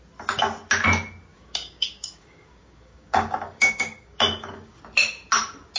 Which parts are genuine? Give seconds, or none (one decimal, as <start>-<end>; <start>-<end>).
0.0-1.3; 4.8-5.8